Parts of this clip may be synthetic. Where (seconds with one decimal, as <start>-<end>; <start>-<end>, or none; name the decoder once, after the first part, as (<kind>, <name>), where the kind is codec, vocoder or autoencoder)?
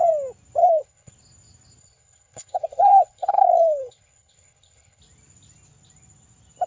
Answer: 0.6-1.1 (codec, HILCodec); 1.8-5.0